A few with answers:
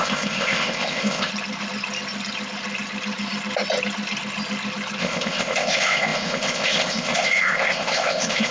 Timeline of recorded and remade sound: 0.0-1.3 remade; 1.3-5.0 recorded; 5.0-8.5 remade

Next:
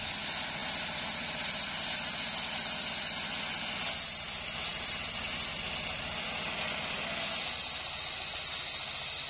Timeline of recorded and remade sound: 0.0-9.3 recorded

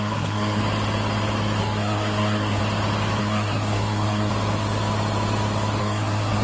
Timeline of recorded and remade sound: 0.0-0.6 remade; 0.6-1.6 recorded; 1.6-2.6 remade; 2.6-3.2 recorded; 3.2-4.3 remade; 4.3-5.8 recorded; 5.8-6.4 remade

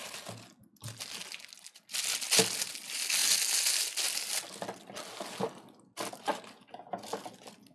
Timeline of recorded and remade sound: 0.0-7.7 recorded

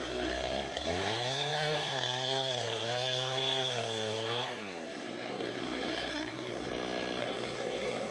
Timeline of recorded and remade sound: 0.0-6.7 remade; 6.7-7.2 recorded; 7.2-8.1 remade

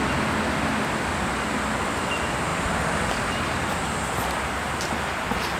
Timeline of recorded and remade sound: 0.0-5.6 recorded

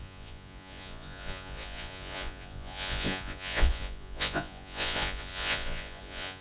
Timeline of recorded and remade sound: 0.0-6.4 remade